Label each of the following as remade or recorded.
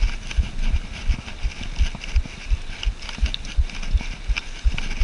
recorded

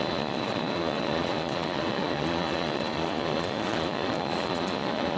remade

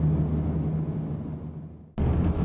recorded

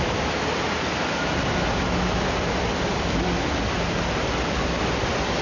recorded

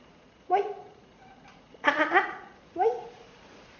remade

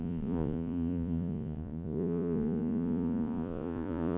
remade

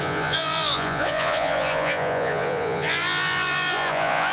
remade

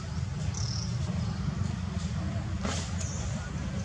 recorded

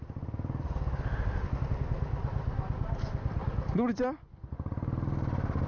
recorded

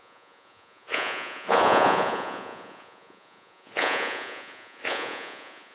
remade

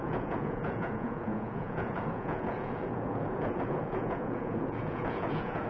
remade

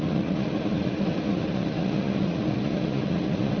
remade